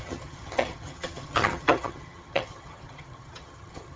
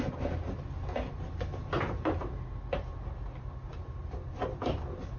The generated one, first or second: first